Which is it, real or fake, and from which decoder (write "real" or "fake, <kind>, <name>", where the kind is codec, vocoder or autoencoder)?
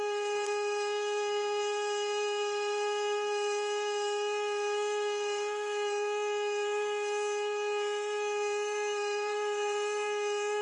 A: fake, codec, SNAC